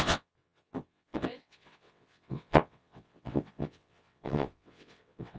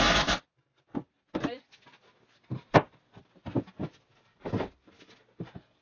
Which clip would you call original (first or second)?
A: second